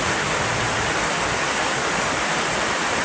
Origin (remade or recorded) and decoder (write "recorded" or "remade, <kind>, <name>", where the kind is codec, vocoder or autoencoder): recorded